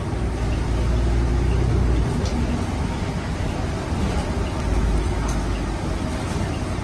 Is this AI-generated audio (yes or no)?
no